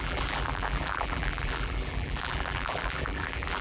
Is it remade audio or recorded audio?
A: remade